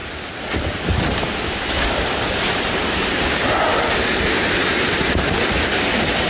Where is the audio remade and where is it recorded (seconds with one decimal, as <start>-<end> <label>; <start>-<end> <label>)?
0.0-6.3 recorded